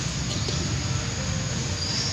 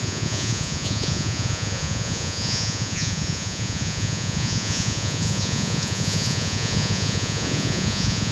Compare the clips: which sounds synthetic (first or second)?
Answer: second